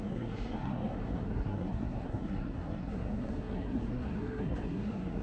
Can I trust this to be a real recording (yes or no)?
no